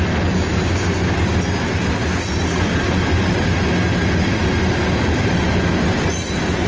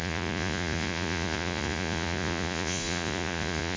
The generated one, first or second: second